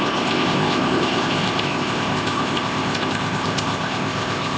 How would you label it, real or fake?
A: fake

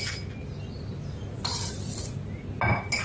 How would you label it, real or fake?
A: real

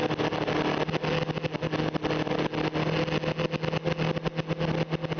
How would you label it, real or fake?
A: real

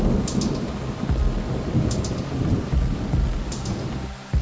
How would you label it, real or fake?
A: real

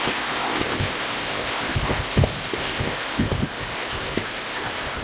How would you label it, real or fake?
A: fake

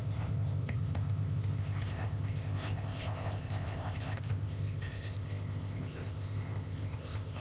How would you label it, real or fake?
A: fake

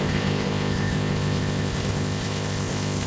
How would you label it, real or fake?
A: fake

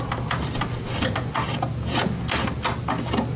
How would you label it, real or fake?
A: real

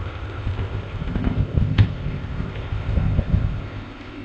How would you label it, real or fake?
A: fake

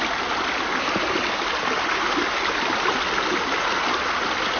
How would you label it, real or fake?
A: real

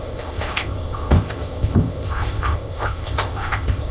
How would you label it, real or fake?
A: fake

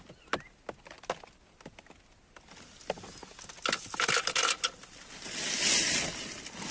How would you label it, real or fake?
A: real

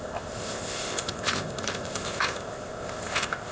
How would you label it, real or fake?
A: fake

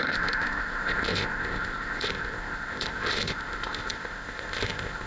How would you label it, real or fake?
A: fake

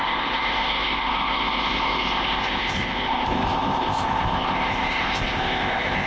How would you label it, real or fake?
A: fake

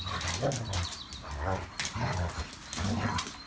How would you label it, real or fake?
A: real